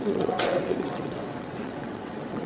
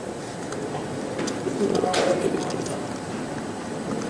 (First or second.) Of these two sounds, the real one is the second